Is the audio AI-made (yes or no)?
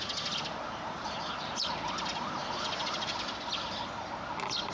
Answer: no